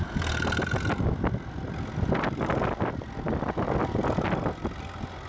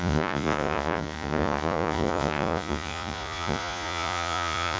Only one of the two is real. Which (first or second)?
first